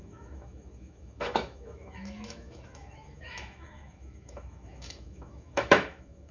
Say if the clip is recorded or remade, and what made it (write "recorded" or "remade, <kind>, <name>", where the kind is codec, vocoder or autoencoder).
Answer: remade, autoencoder, DAC-VAE